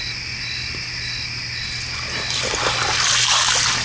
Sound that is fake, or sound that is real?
real